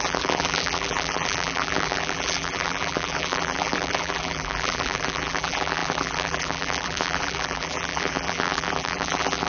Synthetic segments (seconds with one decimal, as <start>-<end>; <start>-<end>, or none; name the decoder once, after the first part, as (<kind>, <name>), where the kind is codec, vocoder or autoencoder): 0.0-9.5 (vocoder, BigVGAN v2)